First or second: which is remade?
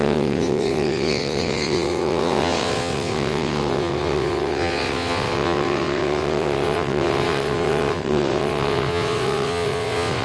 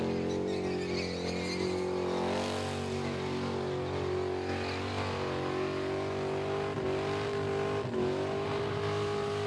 first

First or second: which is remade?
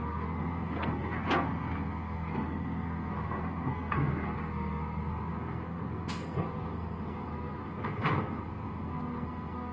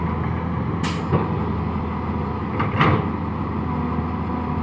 first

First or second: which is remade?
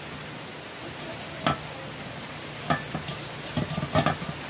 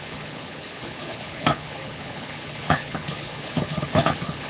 second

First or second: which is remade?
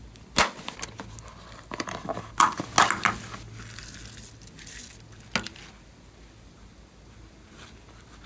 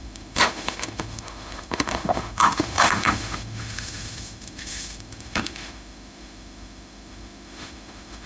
second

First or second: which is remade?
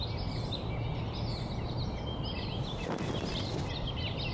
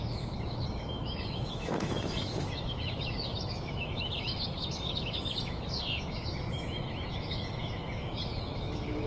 second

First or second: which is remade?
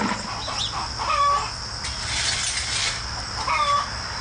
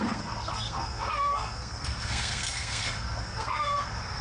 second